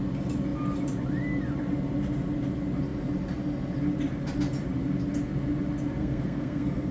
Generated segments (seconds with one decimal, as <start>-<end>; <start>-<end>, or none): 6.0-6.9